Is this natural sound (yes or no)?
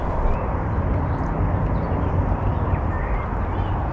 no